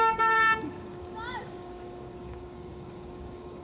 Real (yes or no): no